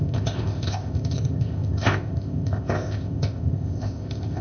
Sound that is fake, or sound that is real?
fake